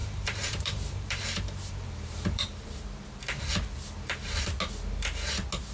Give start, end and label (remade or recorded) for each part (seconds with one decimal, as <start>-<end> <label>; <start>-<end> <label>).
0.0-3.4 remade; 3.4-5.7 recorded